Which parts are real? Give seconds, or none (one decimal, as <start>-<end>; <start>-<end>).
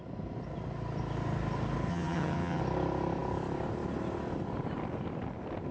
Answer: 0.0-1.9; 2.6-5.7